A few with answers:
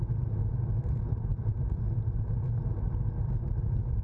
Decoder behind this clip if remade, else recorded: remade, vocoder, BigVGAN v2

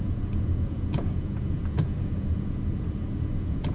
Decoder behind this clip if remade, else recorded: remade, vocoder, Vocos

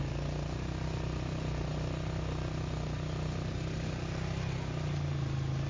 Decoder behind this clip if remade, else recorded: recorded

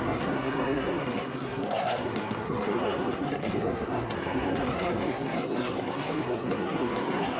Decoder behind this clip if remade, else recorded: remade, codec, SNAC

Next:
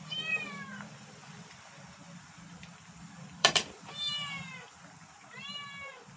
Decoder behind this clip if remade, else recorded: remade, vocoder, BigVGAN v2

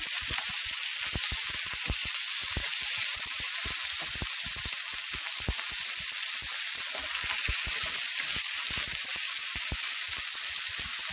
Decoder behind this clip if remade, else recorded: recorded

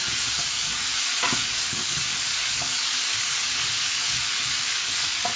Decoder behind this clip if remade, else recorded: remade, codec, DAC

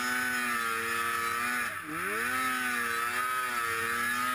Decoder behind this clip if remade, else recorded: recorded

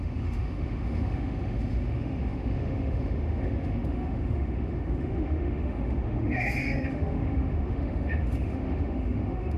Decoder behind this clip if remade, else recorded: remade, autoencoder, DAC-VAE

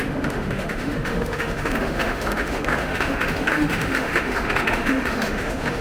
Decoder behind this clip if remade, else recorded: remade, autoencoder, DAC-VAE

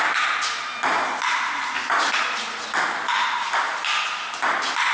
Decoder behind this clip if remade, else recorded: recorded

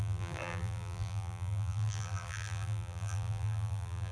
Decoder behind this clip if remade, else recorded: remade, vocoder, BigVGAN v2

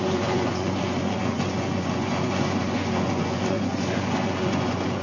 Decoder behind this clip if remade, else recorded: remade, vocoder, Vocos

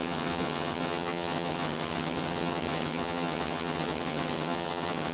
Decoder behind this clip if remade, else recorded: remade, vocoder, HiFi-GAN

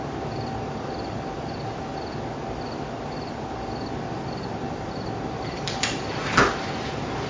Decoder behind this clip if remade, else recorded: recorded